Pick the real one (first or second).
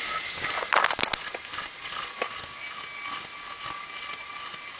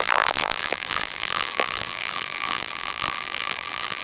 first